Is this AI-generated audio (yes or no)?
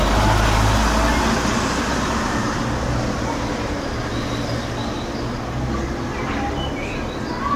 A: no